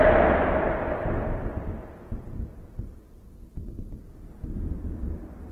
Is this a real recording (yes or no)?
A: yes